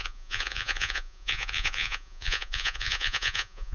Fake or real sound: fake